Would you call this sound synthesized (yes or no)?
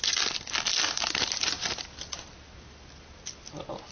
no